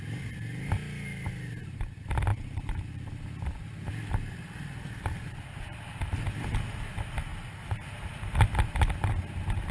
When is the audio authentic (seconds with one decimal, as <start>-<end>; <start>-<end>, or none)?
0.0-9.7